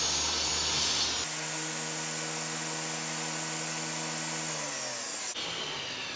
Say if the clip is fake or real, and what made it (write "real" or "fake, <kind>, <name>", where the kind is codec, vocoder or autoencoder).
real